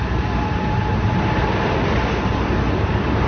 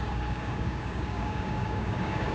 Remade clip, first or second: second